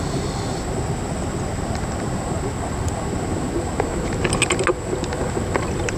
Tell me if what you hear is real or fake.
real